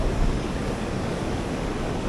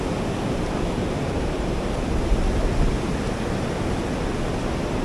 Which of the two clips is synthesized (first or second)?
first